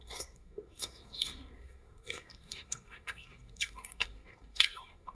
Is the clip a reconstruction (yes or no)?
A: yes